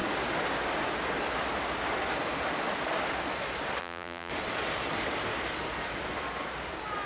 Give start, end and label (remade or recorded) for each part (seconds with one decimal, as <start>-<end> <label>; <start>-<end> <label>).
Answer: 0.0-3.8 recorded; 3.8-4.3 remade; 4.3-7.1 recorded